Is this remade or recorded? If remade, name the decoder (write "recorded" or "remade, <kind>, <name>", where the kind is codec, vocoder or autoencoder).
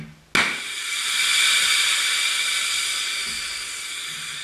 recorded